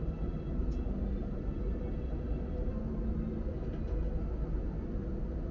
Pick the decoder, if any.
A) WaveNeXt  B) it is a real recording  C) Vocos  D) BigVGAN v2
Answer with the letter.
B